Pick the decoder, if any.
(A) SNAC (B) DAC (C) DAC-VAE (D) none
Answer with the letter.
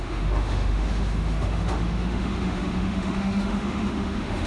C